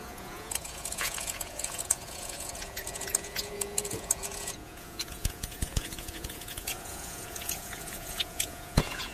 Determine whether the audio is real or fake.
fake